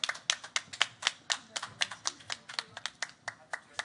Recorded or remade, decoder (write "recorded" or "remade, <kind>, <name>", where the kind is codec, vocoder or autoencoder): recorded